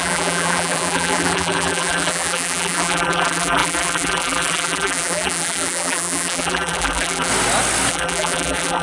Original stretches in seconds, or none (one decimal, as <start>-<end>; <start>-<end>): 7.3-7.9